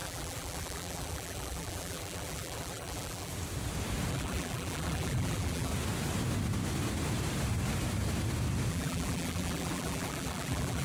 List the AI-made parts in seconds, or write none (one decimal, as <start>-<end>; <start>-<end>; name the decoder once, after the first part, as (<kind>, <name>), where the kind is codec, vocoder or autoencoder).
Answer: 0.0-3.3 (vocoder, BigVGAN v2); 4.1-5.7; 8.7-10.8